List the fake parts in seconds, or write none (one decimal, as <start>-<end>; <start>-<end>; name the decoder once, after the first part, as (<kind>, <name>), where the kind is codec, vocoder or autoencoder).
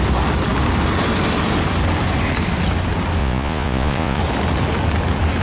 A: 3.2-4.2 (vocoder, Vocos)